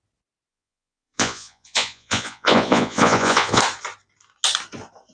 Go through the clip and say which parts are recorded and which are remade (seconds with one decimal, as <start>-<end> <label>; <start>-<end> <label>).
0.0-0.5 recorded; 0.5-3.6 remade; 3.6-5.1 recorded